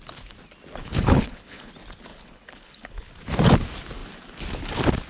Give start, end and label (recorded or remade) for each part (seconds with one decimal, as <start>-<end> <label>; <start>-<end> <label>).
0.0-0.8 recorded; 0.8-1.7 remade; 1.7-2.1 recorded; 2.1-3.1 remade; 3.1-5.1 recorded

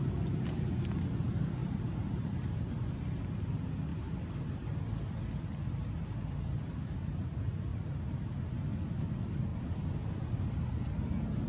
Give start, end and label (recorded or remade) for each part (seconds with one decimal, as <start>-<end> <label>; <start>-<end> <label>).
0.0-1.6 recorded; 1.6-2.7 remade; 2.7-3.9 recorded; 3.9-4.8 remade; 4.8-7.7 recorded; 7.7-8.6 remade; 8.6-11.5 recorded